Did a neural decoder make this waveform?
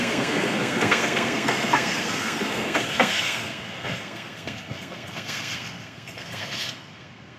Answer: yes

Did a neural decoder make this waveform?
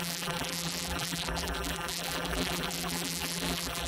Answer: yes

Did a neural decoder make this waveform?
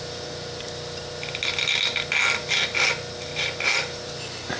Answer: no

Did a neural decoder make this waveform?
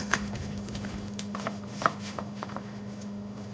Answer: yes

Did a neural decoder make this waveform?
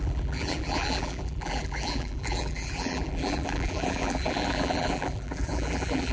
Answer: yes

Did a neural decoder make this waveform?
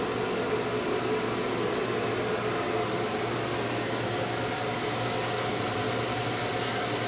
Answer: no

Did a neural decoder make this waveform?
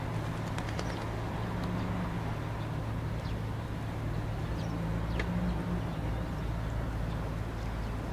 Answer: no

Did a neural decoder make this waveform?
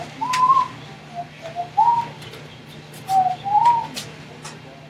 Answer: no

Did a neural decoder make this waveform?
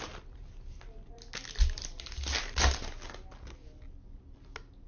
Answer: no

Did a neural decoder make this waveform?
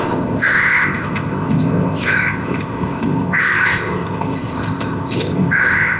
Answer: yes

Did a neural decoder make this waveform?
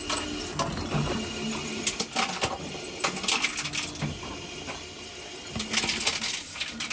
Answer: no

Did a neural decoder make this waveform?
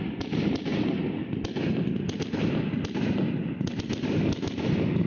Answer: no